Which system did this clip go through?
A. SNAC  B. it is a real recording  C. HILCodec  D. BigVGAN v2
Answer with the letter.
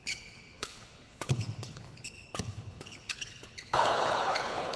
C